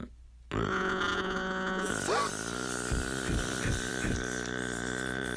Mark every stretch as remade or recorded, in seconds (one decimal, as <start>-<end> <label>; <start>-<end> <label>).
0.0-0.7 recorded; 0.7-1.9 remade; 1.9-5.4 recorded